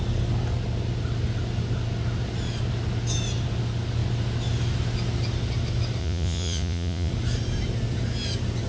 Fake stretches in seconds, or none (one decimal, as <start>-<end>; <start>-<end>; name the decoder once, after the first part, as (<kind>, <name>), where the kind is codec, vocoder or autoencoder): 6.0-7.1 (vocoder, Vocos)